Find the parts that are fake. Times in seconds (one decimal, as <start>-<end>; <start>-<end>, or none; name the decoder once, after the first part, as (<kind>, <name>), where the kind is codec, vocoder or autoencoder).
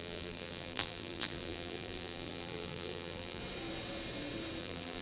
0.0-3.4 (vocoder, BigVGAN v2); 4.6-5.0